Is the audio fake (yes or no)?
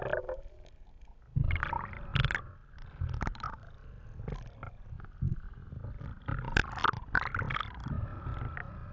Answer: no